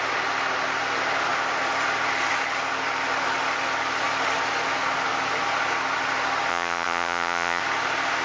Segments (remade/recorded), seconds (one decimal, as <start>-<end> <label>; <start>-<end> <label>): 0.0-6.5 recorded; 6.5-7.6 remade; 7.6-8.2 recorded